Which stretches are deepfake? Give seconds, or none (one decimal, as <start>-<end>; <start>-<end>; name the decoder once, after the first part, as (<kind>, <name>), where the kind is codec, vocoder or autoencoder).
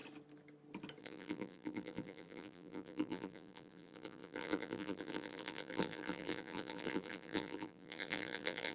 1.0-8.7 (vocoder, BigVGAN v2)